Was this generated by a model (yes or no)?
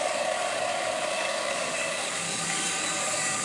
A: yes